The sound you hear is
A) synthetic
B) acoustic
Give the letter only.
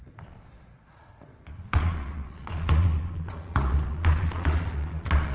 A